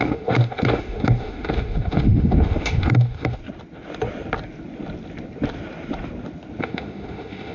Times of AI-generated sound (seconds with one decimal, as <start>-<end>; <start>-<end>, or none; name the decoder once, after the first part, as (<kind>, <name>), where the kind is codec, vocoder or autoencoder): 0.0-3.4 (autoencoder, DAC-VAE); 6.6-7.5